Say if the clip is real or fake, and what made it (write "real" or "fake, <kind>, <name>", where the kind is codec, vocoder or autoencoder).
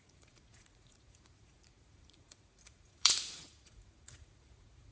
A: fake, vocoder, Vocos